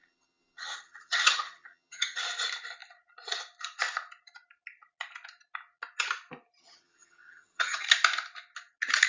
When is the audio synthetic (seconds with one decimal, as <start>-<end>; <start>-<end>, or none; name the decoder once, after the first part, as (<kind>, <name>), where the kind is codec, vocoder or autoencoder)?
0.0-2.2 (vocoder, HiFi-GAN); 6.6-7.8